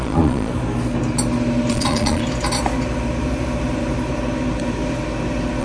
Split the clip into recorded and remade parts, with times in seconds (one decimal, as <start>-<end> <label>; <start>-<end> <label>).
0.0-0.5 remade; 0.5-1.7 recorded; 1.7-2.2 remade; 2.2-5.6 recorded